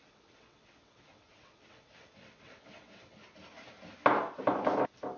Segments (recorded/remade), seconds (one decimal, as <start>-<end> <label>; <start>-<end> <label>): 0.0-3.2 remade; 3.2-5.2 recorded